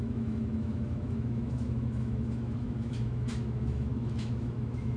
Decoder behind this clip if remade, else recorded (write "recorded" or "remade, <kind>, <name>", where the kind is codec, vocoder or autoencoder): remade, autoencoder, DAC-VAE